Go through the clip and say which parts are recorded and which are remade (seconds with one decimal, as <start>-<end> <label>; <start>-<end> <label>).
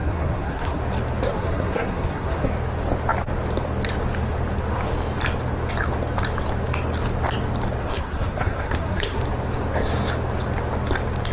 0.0-0.8 remade; 0.8-1.3 recorded; 1.3-2.5 remade; 2.5-7.8 recorded; 7.8-9.2 remade; 9.2-11.3 recorded